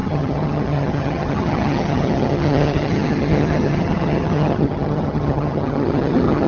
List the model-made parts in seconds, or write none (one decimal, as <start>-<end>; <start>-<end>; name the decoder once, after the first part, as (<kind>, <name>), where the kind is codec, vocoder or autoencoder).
0.0-6.5 (vocoder, HiFi-GAN)